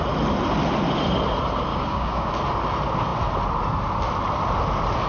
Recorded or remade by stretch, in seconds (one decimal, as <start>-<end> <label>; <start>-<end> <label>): 0.0-1.7 recorded; 1.7-2.3 remade; 2.3-5.1 recorded